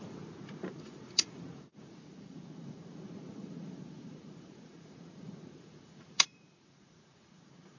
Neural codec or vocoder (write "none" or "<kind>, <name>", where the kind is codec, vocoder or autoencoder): vocoder, Vocos